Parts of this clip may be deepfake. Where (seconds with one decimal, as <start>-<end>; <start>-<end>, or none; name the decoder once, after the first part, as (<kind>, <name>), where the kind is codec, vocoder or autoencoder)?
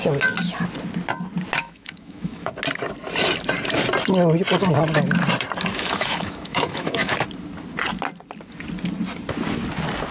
1.6-2.5 (autoencoder, DAC-VAE); 5.7-7.1